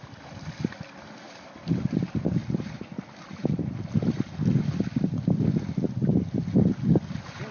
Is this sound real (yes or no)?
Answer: yes